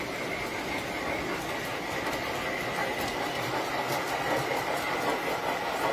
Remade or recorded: recorded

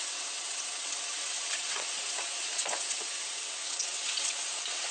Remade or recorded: remade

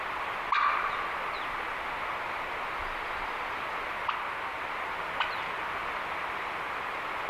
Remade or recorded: recorded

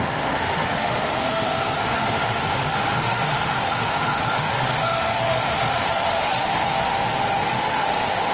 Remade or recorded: remade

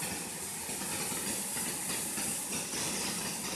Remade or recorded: recorded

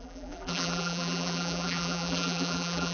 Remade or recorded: remade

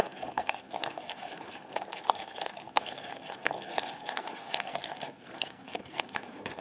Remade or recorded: remade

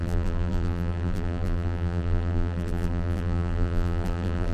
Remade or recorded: remade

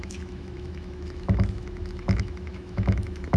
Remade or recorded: remade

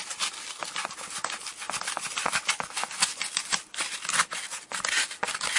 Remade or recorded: recorded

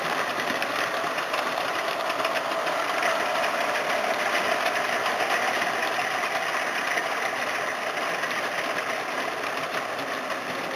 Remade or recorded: remade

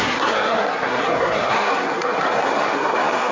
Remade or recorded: remade